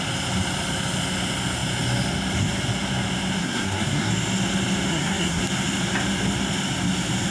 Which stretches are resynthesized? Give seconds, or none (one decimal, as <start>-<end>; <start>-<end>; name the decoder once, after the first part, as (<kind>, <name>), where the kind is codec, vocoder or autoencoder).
3.4-4.1 (codec, SNAC); 4.9-5.4